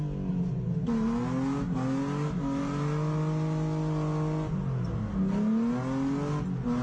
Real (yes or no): yes